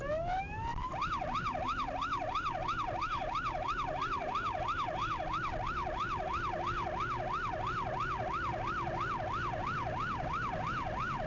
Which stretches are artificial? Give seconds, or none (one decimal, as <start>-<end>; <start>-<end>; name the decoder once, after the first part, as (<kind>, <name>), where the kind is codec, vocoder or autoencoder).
0.7-5.1 (vocoder, BigVGAN v2); 8.5-9.1